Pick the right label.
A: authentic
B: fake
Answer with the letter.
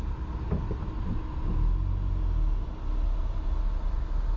A